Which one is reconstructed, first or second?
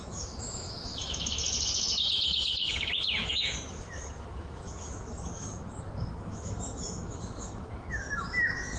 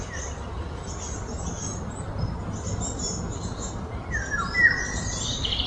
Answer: first